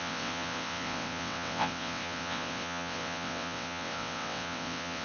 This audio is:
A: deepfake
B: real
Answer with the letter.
A